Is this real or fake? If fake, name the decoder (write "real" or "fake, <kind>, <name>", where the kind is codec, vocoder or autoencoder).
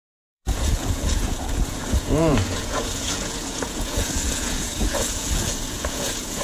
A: fake, vocoder, Vocos